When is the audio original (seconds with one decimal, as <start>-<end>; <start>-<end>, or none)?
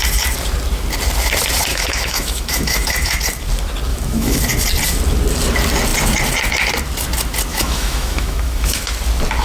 0.0-1.7; 3.2-3.9; 4.4-7.5; 8.9-9.4